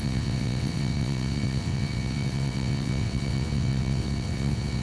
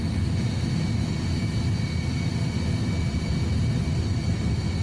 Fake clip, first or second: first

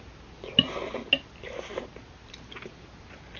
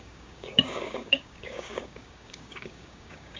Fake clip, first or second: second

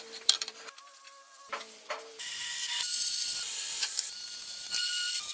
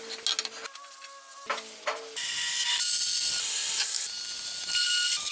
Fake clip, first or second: first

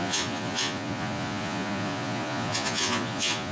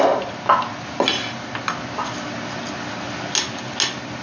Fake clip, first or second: first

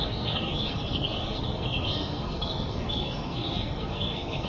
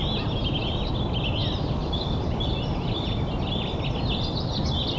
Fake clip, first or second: first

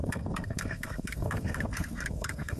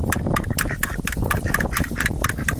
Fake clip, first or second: first